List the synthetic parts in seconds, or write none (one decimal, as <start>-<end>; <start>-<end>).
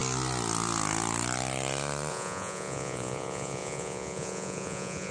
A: 2.1-5.1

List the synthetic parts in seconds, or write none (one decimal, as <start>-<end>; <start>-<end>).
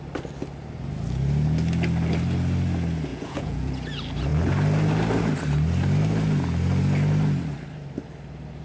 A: 3.1-3.7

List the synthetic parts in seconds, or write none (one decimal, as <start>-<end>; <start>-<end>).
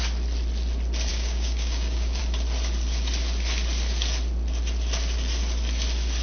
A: 1.1-2.2